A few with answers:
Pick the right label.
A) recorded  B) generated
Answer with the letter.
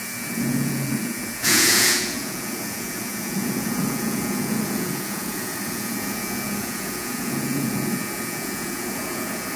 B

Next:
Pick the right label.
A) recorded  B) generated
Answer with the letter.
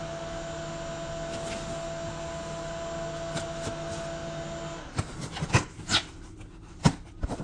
A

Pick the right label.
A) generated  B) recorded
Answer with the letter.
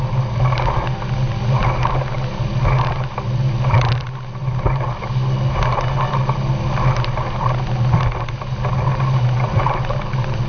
B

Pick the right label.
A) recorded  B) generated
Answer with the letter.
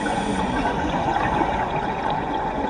B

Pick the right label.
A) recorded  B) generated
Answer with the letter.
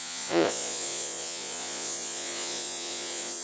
B